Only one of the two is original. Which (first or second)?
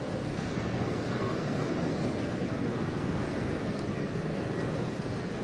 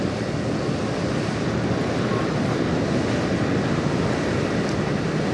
second